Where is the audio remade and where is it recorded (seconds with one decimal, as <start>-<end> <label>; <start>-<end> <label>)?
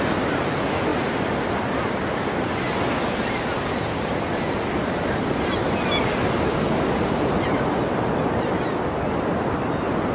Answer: 0.0-10.1 recorded